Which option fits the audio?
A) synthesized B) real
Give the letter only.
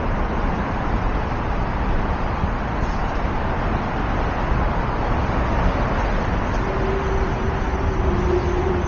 B